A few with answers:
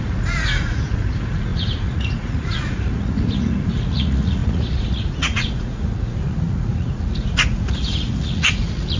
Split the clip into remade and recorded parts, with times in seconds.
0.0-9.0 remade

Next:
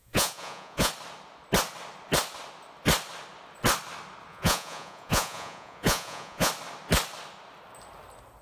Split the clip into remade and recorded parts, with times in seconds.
0.0-0.9 remade; 0.9-4.3 recorded; 4.3-6.5 remade; 6.5-8.4 recorded

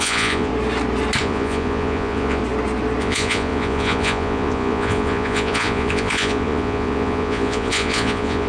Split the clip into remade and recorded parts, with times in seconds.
0.0-0.5 remade; 0.5-1.2 recorded; 1.2-2.4 remade; 2.4-3.0 recorded; 3.0-8.5 remade

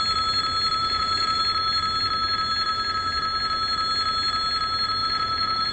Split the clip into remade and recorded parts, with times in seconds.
0.0-0.8 recorded; 0.8-1.4 remade; 1.4-5.0 recorded; 5.0-5.7 remade

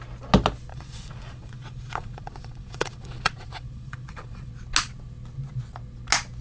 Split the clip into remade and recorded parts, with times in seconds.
0.0-0.7 recorded; 0.7-4.5 remade; 4.5-6.4 recorded